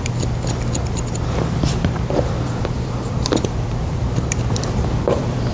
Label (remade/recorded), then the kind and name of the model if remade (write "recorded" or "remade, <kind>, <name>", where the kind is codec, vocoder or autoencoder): remade, vocoder, BigVGAN v2